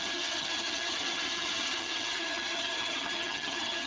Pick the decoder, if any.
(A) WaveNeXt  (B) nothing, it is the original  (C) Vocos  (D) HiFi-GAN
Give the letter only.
D